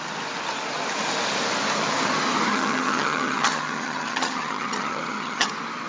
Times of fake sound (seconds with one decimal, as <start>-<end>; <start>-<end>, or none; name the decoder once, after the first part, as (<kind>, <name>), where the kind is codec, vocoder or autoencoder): 2.5-5.5 (vocoder, HiFi-GAN)